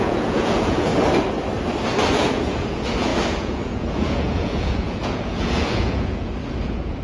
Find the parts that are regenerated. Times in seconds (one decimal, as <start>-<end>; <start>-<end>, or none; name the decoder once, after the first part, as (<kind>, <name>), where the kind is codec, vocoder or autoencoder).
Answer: 0.0-0.9 (vocoder, Vocos); 2.1-7.0